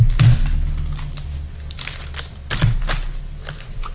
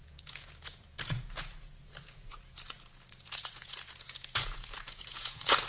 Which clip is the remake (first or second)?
second